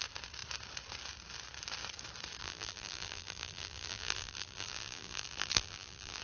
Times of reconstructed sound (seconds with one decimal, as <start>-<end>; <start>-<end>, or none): 2.4-6.2